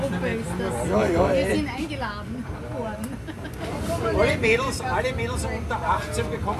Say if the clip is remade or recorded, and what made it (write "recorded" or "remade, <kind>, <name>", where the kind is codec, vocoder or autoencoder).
recorded